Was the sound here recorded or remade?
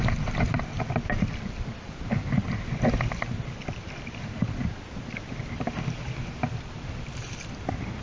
recorded